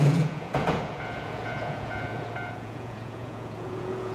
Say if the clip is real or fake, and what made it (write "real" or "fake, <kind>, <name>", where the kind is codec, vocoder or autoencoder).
fake, vocoder, Vocos